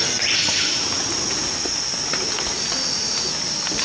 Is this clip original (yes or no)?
yes